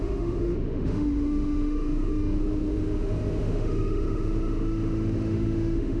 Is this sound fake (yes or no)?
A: yes